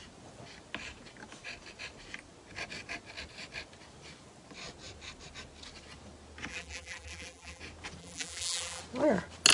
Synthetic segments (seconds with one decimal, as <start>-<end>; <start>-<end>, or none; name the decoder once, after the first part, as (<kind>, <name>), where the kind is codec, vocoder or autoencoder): 6.5-7.6 (vocoder, BigVGAN v2); 8.0-8.8